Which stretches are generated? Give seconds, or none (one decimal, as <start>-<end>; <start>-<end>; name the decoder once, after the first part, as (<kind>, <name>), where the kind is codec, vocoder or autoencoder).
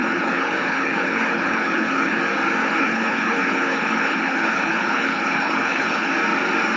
0.0-2.2 (codec, HILCodec); 2.6-6.1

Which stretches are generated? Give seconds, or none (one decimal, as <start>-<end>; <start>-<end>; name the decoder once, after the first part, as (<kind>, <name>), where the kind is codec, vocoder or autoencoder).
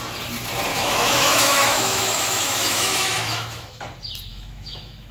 0.7-3.8 (autoencoder, DAC-VAE); 4.3-5.1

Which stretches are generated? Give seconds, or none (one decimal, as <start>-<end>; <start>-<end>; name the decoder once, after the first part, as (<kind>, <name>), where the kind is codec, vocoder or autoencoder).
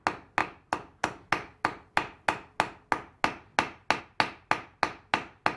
none